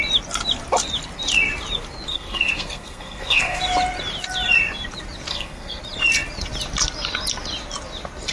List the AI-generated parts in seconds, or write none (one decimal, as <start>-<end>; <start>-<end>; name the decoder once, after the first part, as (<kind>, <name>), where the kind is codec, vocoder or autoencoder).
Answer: 2.1-3.6 (codec, SNAC); 5.3-5.8